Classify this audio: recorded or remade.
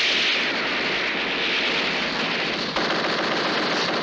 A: recorded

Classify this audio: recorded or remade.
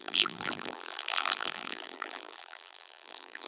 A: remade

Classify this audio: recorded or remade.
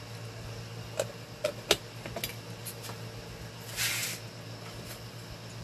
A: recorded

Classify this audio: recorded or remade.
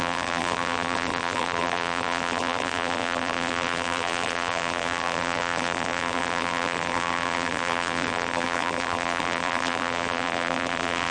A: remade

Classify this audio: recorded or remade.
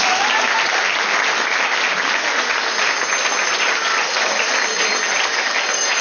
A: recorded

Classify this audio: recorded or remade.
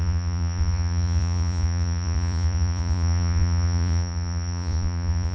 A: remade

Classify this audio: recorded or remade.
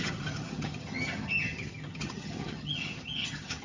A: remade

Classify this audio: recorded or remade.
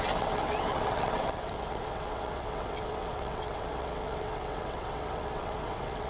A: remade